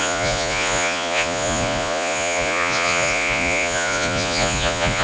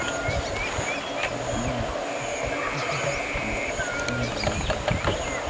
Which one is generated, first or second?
first